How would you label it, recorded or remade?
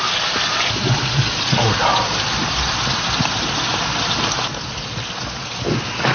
recorded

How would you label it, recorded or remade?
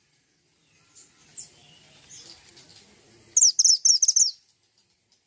recorded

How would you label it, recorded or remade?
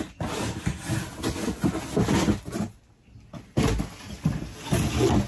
recorded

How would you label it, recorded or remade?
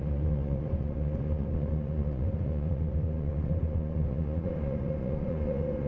remade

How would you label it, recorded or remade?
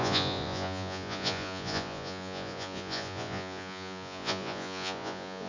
remade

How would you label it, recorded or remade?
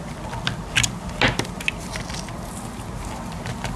recorded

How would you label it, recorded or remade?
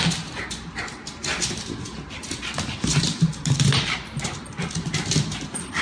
recorded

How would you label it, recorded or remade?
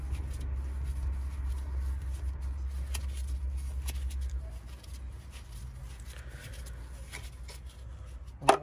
recorded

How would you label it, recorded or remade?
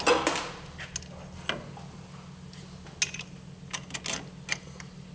recorded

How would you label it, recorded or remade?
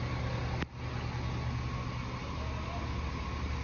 recorded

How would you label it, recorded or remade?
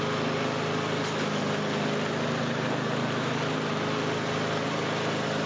recorded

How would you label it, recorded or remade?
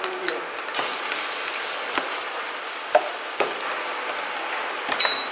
recorded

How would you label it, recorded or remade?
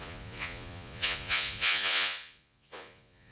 remade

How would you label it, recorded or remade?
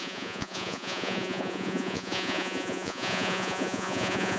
remade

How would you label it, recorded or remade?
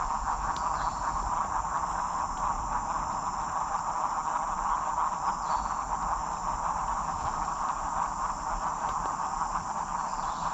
recorded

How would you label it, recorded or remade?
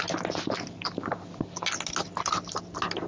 recorded